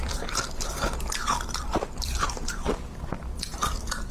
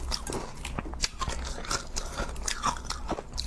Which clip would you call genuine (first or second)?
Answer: second